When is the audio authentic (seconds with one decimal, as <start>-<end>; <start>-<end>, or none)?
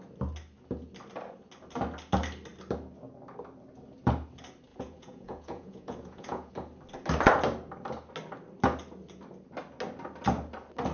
0.0-4.7; 6.5-10.9